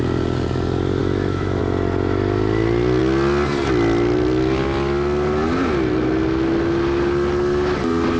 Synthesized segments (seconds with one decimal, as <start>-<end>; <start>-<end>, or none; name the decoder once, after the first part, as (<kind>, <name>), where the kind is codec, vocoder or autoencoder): 1.0-1.6 (autoencoder, DAC-VAE)